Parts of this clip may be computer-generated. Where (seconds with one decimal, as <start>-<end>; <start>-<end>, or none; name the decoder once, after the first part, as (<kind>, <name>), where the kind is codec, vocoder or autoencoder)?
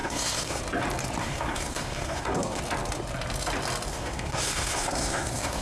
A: 0.0-0.6 (codec, SNAC); 1.2-2.6; 3.9-5.6